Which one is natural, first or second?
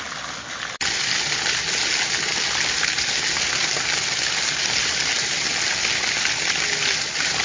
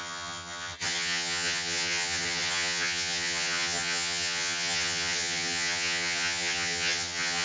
first